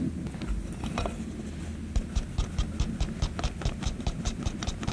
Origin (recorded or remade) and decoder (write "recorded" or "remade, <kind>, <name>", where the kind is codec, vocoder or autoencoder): remade, vocoder, BigVGAN v2